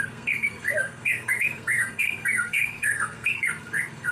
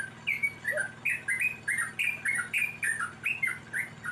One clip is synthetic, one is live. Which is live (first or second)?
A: second